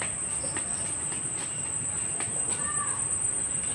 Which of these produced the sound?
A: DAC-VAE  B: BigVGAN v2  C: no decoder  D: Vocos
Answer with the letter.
C